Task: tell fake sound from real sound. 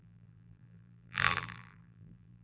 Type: fake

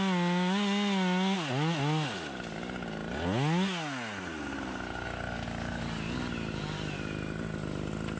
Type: real